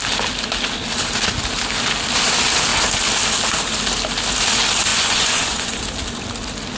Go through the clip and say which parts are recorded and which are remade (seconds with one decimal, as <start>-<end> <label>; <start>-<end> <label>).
0.0-4.9 recorded; 4.9-5.8 remade; 5.8-6.8 recorded